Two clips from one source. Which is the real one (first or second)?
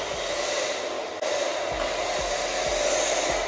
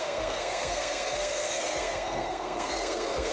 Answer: first